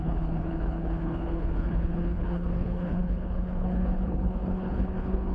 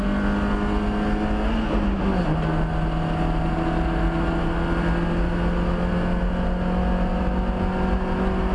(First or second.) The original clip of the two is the second